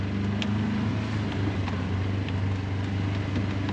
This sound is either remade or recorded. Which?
recorded